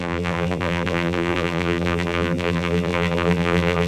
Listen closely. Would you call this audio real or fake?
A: fake